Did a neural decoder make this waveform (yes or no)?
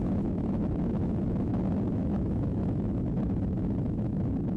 yes